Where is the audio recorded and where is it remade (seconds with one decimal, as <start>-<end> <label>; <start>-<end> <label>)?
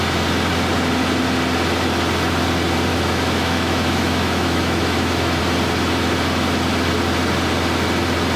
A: 0.0-2.9 recorded; 2.9-5.4 remade; 5.4-8.4 recorded